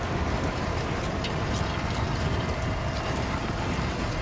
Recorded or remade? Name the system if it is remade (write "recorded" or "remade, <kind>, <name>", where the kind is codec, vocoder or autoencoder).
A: recorded